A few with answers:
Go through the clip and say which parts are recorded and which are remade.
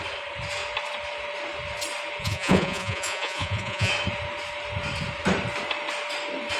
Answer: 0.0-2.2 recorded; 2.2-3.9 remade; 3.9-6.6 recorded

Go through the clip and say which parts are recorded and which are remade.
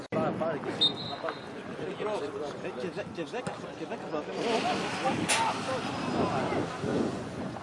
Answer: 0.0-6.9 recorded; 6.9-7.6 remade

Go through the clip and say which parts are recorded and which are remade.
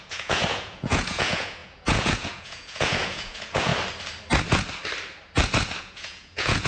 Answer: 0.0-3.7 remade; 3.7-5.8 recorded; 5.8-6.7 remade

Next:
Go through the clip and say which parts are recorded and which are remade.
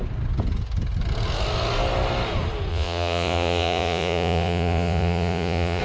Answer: 0.0-2.7 recorded; 2.7-5.8 remade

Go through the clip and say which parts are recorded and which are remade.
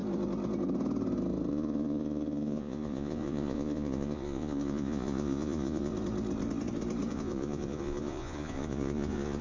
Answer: 0.0-1.5 recorded; 1.5-5.9 remade; 5.9-7.1 recorded; 7.1-9.4 remade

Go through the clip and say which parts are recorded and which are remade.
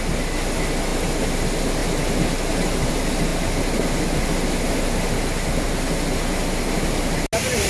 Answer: 0.0-7.7 recorded